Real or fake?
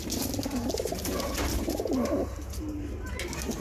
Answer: real